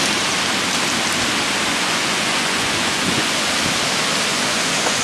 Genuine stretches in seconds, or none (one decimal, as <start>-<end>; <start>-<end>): 0.0-1.7; 3.5-4.3